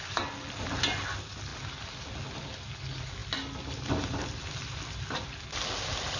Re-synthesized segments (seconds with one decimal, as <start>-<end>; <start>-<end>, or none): none

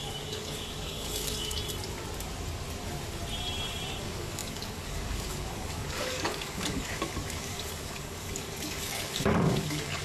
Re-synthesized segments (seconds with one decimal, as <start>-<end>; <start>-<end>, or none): 0.0-1.6; 4.0-10.0

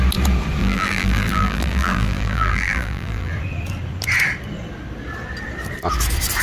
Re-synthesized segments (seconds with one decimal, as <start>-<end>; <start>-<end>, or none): 0.6-3.3